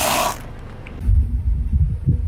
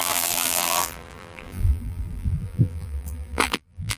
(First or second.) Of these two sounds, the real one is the first